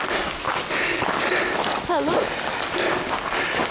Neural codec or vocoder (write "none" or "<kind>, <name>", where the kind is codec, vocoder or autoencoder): none